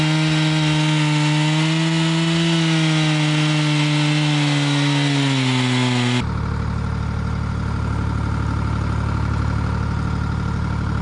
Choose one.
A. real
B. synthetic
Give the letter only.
A